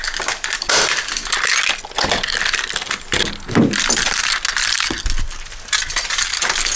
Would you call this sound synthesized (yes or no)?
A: no